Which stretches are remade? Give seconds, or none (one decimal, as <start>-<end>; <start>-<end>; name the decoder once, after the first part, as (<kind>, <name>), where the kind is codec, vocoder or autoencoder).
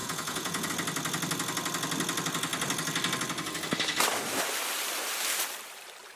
0.0-0.7 (vocoder, Vocos)